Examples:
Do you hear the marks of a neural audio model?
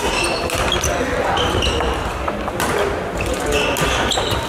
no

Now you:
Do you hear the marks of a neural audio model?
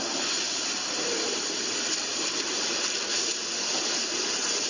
no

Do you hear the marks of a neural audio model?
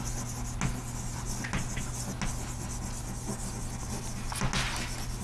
no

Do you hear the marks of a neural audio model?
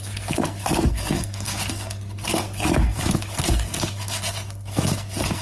yes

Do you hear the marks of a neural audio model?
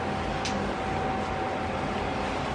no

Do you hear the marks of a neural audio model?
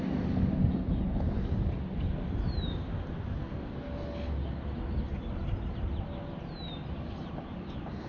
no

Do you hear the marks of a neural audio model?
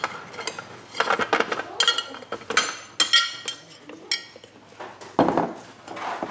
no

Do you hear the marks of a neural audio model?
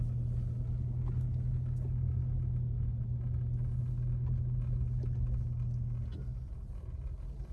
no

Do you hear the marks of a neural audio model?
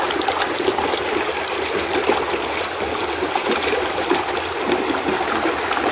no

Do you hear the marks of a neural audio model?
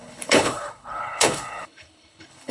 yes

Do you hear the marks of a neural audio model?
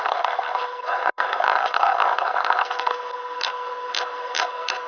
yes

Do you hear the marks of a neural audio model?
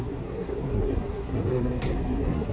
yes